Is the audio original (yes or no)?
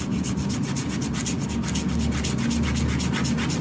yes